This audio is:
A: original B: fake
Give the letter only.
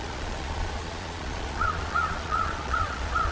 B